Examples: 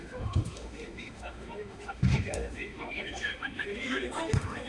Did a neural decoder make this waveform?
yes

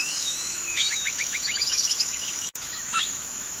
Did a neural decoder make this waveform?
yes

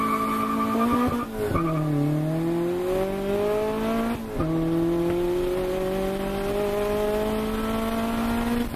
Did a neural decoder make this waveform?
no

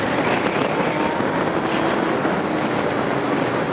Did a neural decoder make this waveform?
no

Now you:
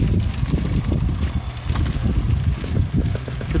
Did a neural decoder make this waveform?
no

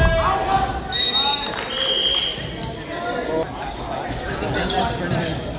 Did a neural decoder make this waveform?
no